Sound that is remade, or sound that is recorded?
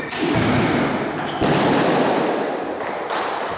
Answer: recorded